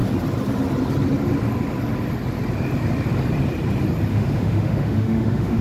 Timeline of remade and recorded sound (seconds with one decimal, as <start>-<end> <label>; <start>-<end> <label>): 0.0-4.1 recorded; 4.1-5.6 remade